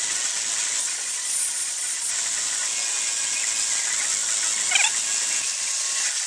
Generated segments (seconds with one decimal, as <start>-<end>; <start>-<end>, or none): 0.8-2.1